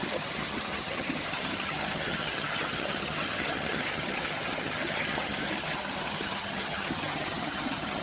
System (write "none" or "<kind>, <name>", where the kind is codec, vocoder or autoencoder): vocoder, HiFi-GAN